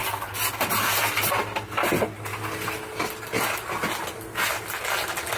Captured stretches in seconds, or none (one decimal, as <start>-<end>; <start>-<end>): 0.0-5.4